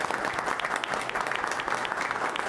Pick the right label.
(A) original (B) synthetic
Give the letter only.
A